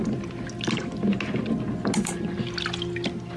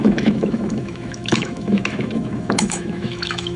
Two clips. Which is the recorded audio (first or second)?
first